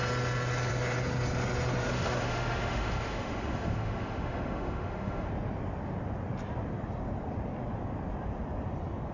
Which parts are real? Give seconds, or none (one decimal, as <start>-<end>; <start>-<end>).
0.0-1.9; 5.3-9.1